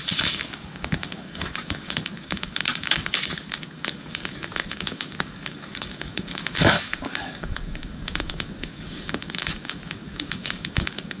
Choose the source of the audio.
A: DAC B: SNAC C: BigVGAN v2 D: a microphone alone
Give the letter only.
A